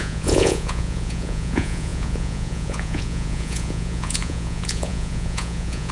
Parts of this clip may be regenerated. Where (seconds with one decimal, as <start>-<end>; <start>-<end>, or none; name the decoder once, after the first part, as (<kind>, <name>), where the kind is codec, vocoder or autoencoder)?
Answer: 0.0-5.9 (vocoder, Vocos)